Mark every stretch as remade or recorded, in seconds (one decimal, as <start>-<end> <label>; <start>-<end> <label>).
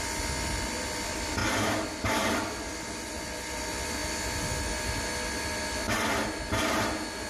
0.0-7.3 recorded